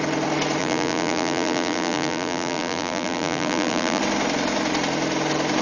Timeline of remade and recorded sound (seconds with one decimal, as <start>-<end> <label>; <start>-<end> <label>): 0.0-0.6 recorded; 0.6-4.0 remade; 4.0-5.6 recorded